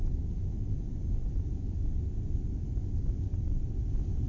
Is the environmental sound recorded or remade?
recorded